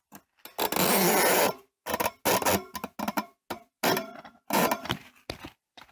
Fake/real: real